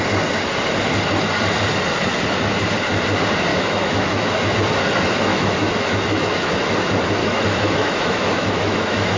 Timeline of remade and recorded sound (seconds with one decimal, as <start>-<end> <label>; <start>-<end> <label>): 0.0-3.5 recorded; 3.5-4.5 remade; 4.5-5.3 recorded; 5.3-6.5 remade; 6.5-7.2 recorded; 7.2-9.2 remade